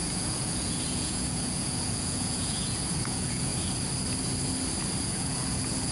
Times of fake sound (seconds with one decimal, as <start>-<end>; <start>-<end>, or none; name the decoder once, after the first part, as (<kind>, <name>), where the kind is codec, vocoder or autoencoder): 0.0-3.5 (vocoder, Vocos); 5.0-5.9